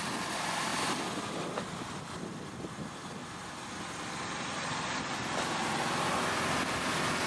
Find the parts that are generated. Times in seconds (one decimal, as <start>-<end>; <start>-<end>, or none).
none